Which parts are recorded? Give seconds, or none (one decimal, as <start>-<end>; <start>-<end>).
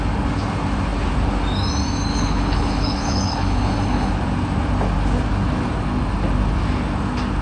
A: 0.0-2.1; 4.1-7.4